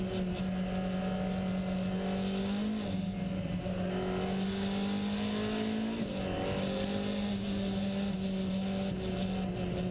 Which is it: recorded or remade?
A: recorded